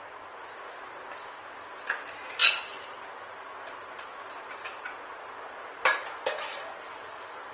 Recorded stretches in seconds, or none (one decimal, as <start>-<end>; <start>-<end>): 0.0-7.5